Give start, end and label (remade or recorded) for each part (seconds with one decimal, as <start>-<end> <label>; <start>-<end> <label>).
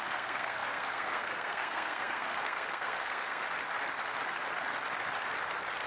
0.0-3.4 remade; 3.4-5.9 recorded